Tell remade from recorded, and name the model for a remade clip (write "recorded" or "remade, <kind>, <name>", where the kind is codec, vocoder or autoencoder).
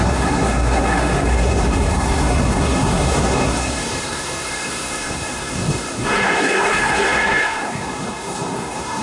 remade, codec, SNAC